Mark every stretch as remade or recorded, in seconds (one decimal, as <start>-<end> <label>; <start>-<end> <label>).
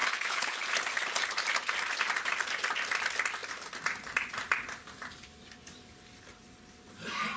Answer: 0.0-0.6 remade; 0.6-7.4 recorded